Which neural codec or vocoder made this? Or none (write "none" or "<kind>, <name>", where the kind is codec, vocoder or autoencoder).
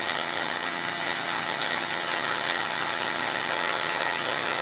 vocoder, HiFi-GAN